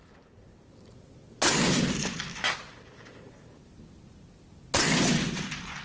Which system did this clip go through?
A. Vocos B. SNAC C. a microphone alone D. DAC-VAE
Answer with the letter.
C